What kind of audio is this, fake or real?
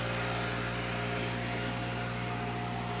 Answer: real